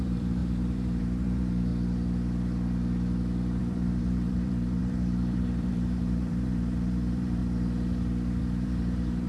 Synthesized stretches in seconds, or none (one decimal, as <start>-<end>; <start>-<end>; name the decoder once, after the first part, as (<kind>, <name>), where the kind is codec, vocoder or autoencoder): 0.0-1.7 (vocoder, BigVGAN v2); 3.6-7.4; 8.4-9.3